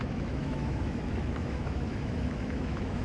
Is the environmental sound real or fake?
fake